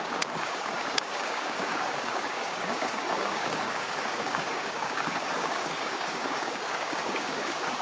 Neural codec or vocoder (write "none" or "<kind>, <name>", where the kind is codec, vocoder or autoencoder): codec, DAC